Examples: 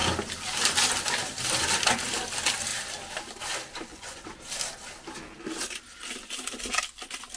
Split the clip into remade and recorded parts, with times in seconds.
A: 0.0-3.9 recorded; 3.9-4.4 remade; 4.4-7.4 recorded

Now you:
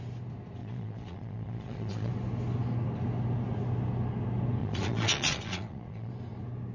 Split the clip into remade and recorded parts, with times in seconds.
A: 0.0-0.6 recorded; 0.6-2.1 remade; 2.1-4.6 recorded; 4.6-6.1 remade; 6.1-6.7 recorded

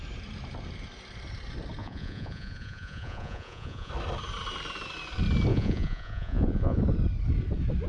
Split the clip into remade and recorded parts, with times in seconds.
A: 0.0-1.8 recorded; 1.8-3.9 remade; 3.9-5.5 recorded; 5.5-6.8 remade; 6.8-7.9 recorded

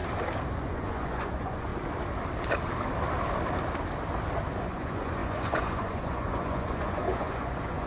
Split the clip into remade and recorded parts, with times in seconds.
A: 0.0-0.6 recorded; 0.6-1.7 remade; 1.7-4.6 recorded; 4.6-7.9 remade

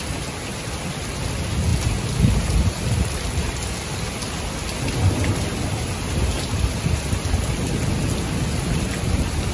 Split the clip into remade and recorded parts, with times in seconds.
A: 0.0-9.5 recorded

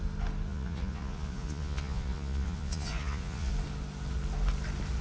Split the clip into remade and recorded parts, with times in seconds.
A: 0.0-0.5 recorded; 0.5-3.5 remade; 3.5-5.0 recorded

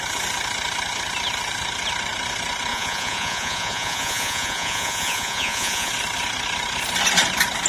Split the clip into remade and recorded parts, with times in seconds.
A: 0.0-2.7 recorded; 2.7-5.9 remade; 5.9-7.7 recorded

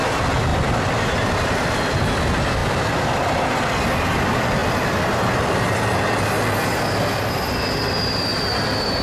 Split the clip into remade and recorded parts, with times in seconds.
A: 0.0-9.0 recorded